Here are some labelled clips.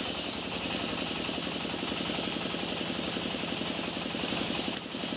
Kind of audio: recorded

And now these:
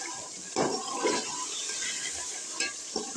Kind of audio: recorded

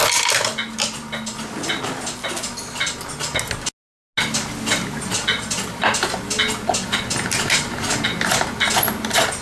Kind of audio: recorded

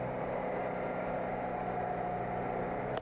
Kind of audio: recorded